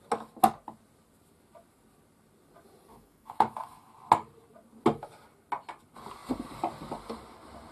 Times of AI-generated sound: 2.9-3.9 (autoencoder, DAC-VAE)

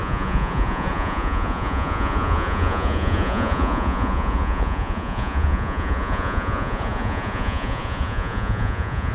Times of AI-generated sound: 0.0-9.1 (vocoder, Vocos)

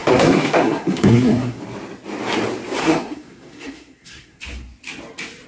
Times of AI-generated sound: 0.0-1.6 (codec, SNAC); 2.8-4.4